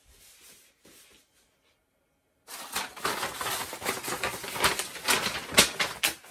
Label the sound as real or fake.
real